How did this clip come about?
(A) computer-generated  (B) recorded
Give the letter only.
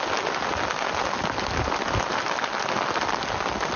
B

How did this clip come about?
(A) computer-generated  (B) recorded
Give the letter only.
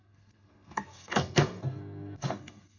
A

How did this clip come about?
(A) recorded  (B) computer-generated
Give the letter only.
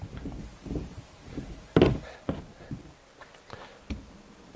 A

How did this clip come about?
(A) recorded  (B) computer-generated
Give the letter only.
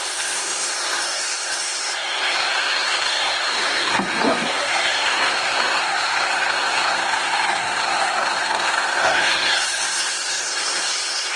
B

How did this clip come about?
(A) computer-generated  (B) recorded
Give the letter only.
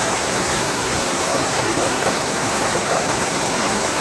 A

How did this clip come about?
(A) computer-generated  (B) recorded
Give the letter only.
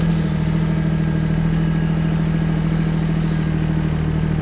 B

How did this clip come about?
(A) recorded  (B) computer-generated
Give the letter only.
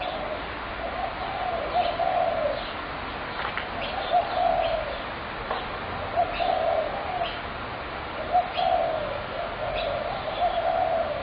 A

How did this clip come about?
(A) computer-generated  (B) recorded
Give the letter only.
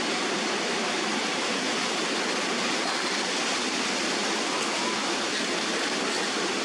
B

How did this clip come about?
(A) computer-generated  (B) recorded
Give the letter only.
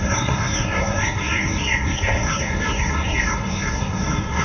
A